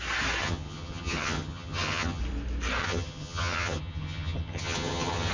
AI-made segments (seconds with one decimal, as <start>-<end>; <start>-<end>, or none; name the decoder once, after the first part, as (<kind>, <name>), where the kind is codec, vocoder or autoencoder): 0.4-2.2 (vocoder, HiFi-GAN); 2.8-5.3